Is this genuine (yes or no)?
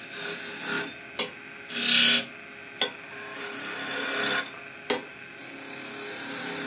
yes